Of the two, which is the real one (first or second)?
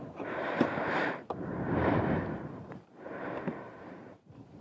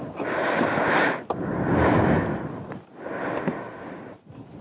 second